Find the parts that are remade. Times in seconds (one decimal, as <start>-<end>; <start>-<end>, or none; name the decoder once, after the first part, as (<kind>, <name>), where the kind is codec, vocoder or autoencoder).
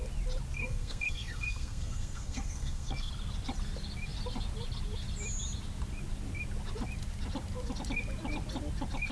0.6-3.1 (codec, SNAC)